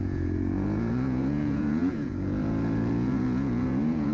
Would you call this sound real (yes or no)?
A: no